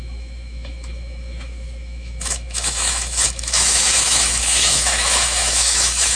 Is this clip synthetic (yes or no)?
yes